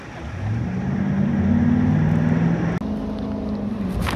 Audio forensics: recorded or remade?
recorded